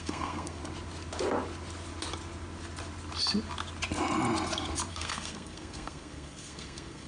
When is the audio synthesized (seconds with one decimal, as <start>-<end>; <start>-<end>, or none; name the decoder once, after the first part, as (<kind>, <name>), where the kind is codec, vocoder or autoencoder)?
0.0-0.6 (codec, SNAC); 4.9-7.1